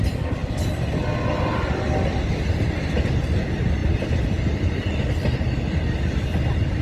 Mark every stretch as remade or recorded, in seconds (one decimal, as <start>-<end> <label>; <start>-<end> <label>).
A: 0.0-6.8 recorded